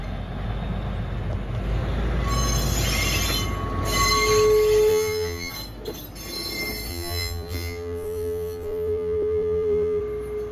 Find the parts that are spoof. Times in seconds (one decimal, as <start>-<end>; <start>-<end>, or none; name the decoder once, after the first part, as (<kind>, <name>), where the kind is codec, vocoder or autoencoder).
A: 4.9-5.5 (vocoder, BigVGAN v2); 6.9-10.0